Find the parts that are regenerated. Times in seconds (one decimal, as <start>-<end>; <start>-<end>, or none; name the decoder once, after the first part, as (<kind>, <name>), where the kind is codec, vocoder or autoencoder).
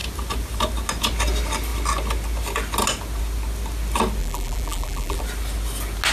4.2-5.2 (vocoder, BigVGAN v2)